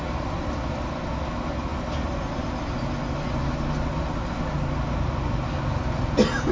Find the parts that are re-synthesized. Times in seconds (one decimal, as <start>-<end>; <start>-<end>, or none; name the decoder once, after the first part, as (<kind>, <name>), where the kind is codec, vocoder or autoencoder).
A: none